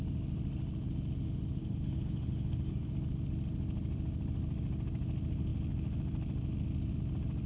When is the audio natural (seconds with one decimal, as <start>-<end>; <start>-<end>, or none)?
0.0-1.6; 2.9-7.5